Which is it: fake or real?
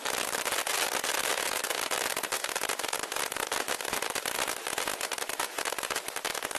real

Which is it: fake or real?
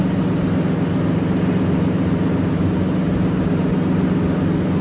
real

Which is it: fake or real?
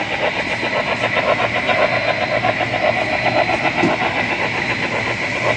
real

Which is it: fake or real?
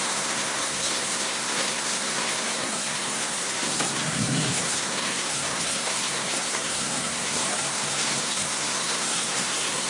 fake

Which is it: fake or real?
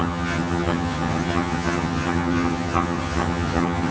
fake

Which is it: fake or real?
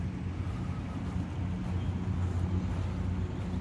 real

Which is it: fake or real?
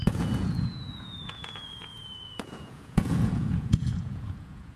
fake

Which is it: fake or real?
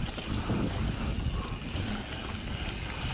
real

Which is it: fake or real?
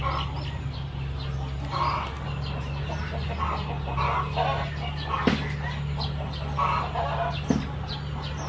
real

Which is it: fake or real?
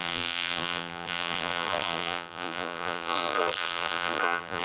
fake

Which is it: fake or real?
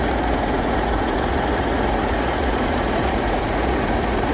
fake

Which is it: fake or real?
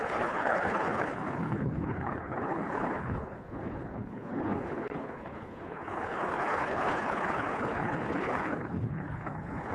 fake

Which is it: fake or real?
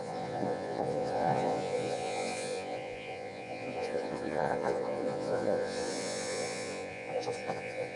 fake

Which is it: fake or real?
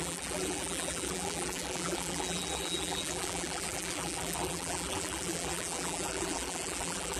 fake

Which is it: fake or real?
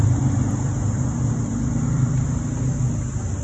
fake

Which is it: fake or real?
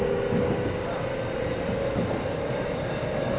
real